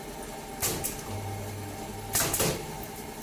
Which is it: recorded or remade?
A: recorded